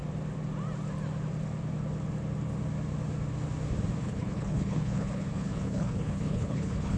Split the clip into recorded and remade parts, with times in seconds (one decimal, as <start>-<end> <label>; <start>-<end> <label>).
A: 0.0-4.0 recorded; 4.0-7.0 remade